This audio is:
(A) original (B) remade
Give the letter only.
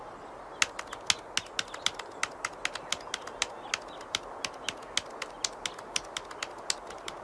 A